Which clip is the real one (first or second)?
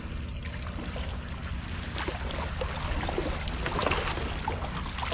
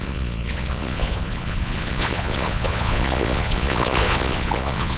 first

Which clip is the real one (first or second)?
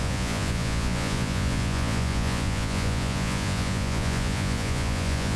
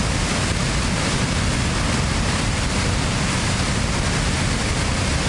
second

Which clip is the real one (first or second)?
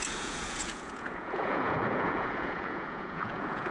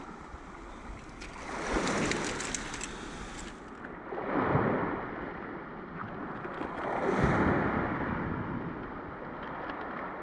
second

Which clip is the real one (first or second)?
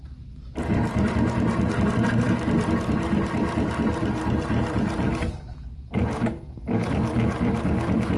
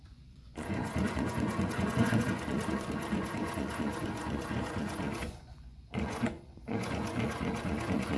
first